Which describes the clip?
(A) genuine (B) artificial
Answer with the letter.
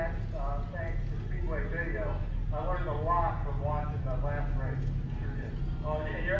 A